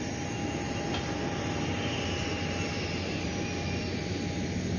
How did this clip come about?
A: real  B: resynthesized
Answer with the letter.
A